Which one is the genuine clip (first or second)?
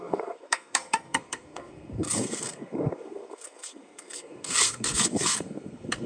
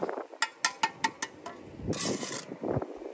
second